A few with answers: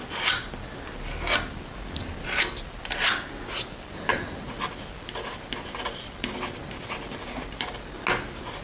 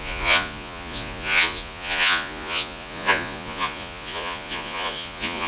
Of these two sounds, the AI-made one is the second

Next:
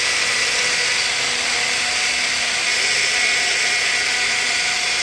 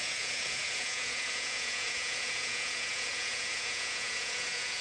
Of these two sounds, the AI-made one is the second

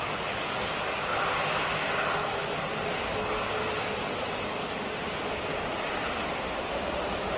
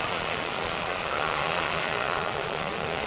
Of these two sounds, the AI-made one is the second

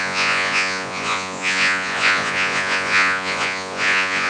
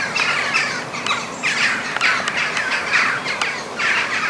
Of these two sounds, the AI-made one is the first